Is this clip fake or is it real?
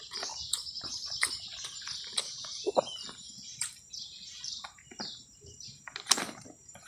fake